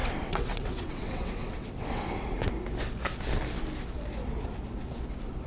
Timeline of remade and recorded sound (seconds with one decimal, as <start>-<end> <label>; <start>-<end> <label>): 0.0-2.5 remade; 2.5-5.5 recorded